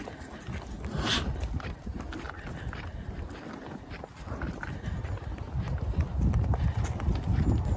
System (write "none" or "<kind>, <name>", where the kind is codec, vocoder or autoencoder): none